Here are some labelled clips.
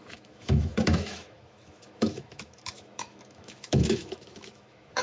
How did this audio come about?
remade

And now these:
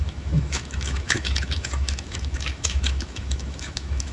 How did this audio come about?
remade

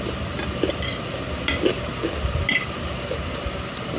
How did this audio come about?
recorded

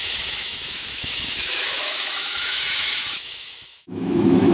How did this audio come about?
remade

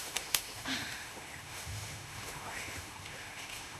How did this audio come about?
remade